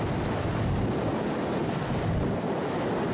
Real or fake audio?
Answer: real